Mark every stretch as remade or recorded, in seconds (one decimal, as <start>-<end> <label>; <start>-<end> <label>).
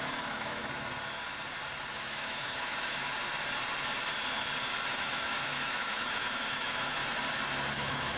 0.0-0.6 remade; 0.6-1.9 recorded; 1.9-3.0 remade; 3.0-4.9 recorded; 4.9-7.0 remade; 7.0-7.7 recorded; 7.7-8.2 remade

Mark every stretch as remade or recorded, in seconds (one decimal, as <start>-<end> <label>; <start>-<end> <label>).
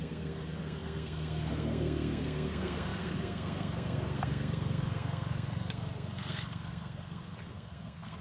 0.0-8.2 remade